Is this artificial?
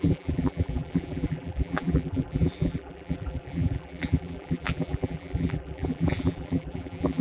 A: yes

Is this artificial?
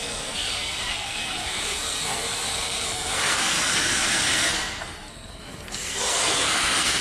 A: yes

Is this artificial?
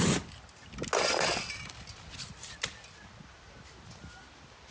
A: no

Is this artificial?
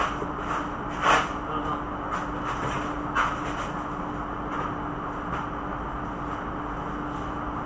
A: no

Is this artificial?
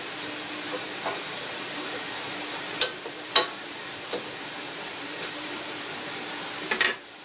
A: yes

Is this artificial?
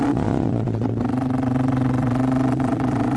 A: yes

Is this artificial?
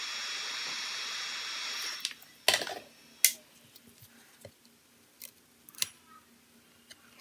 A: no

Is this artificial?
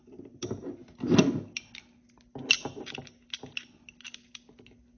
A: no